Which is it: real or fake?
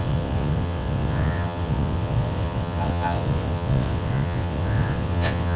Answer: fake